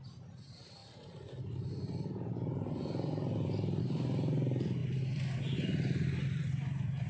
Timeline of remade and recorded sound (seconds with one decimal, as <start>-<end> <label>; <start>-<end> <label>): 0.0-7.1 recorded